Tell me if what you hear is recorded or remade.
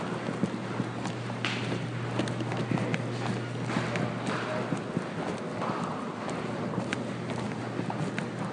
recorded